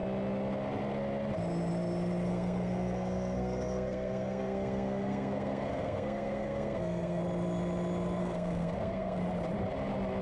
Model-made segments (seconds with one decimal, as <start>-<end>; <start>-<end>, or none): 2.3-7.2; 8.2-9.2